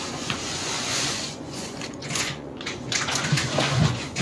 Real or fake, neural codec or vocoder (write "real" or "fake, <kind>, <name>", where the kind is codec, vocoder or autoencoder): fake, vocoder, Vocos